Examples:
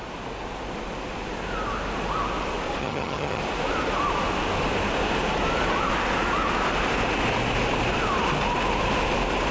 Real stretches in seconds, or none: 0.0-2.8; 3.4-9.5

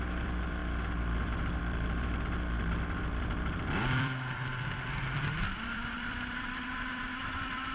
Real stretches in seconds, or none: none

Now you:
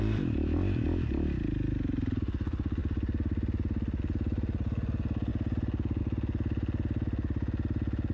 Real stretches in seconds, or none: 0.0-8.1